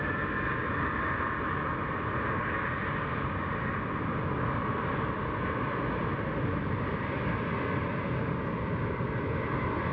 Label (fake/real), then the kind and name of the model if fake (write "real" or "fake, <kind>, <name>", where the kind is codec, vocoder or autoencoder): real